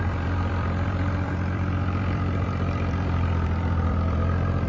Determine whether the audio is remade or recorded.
remade